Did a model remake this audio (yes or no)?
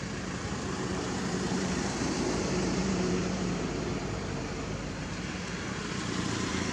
yes